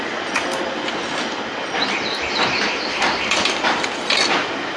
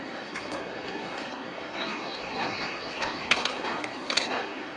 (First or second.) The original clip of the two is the first